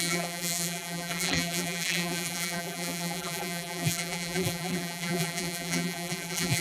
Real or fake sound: fake